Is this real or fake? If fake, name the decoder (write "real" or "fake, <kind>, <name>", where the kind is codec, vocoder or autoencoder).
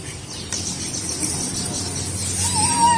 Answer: real